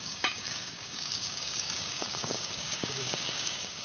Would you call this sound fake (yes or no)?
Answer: yes